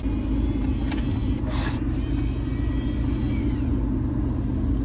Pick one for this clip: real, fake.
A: real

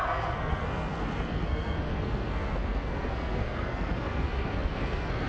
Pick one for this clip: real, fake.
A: fake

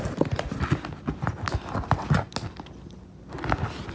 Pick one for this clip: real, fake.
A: real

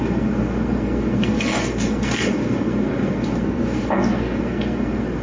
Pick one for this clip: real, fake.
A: fake